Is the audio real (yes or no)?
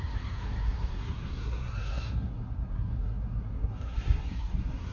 no